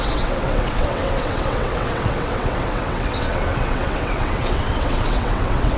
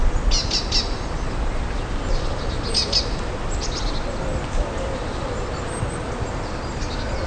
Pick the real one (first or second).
second